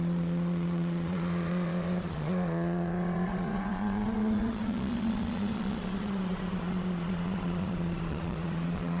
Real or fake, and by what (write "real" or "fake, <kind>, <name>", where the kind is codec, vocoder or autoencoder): fake, vocoder, Vocos